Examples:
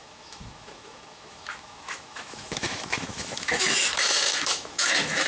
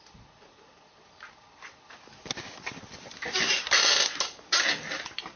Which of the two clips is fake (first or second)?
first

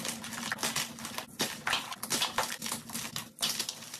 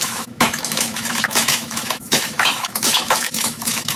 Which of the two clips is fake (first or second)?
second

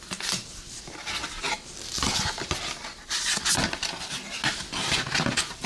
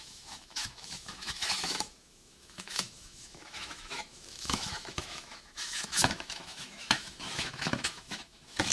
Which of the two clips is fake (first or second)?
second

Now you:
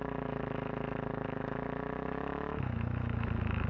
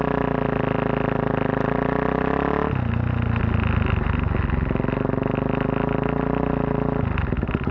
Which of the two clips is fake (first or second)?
first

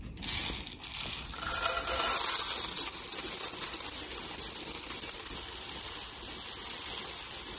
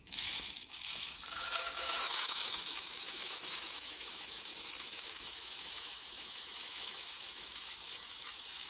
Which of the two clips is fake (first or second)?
second